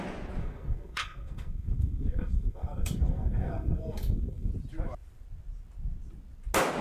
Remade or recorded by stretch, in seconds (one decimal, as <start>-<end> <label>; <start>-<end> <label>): 0.0-0.4 recorded; 0.4-4.5 remade; 4.5-6.8 recorded